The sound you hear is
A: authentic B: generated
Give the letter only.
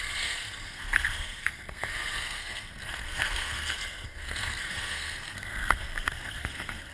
B